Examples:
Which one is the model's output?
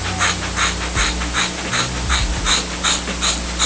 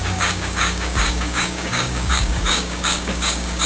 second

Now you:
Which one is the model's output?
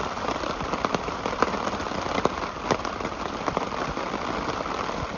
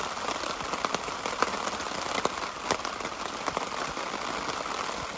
first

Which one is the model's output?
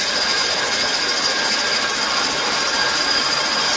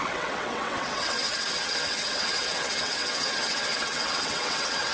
second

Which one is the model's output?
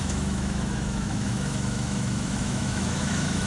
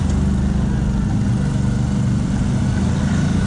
first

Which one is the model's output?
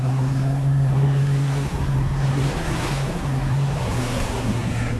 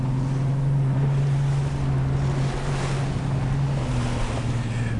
first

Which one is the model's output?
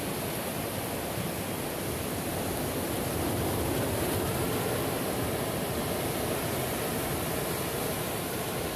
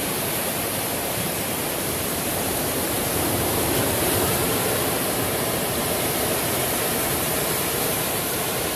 second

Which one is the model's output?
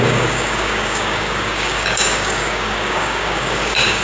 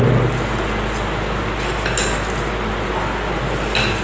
first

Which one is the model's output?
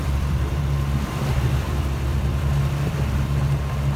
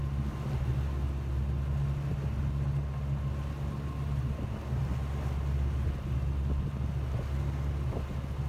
first